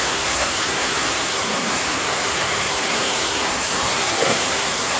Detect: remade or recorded remade